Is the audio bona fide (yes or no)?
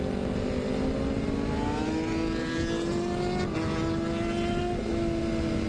yes